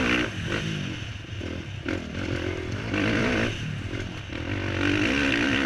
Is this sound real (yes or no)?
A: yes